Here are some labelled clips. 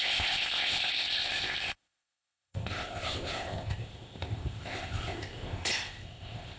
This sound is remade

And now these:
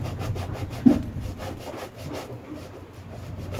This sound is recorded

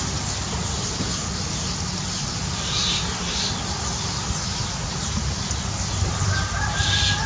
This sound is recorded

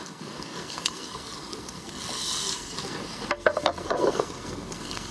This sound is remade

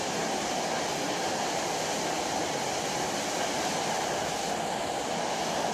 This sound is recorded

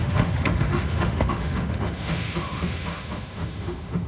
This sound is remade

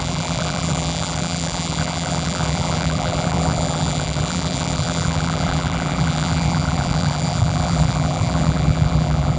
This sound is remade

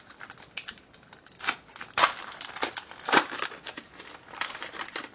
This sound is recorded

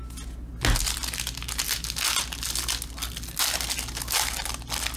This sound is recorded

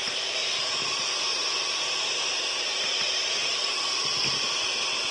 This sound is remade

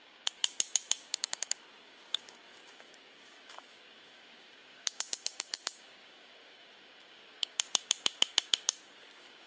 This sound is remade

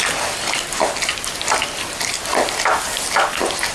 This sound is recorded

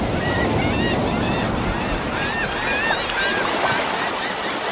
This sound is recorded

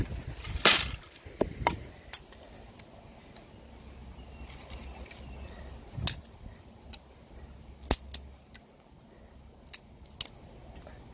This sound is recorded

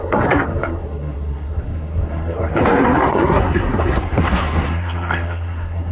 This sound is remade